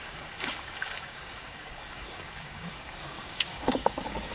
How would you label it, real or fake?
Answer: fake